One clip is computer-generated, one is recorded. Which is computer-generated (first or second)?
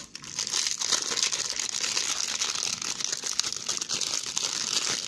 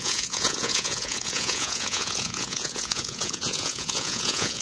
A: second